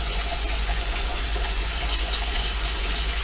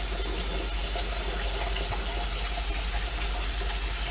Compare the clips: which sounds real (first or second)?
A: second